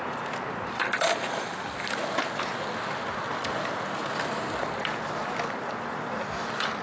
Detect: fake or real real